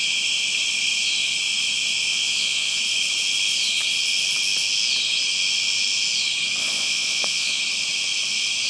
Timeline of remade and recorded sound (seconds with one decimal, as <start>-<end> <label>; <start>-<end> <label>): 0.0-2.1 recorded; 2.1-2.8 remade; 2.8-6.6 recorded; 6.6-7.6 remade; 7.6-8.7 recorded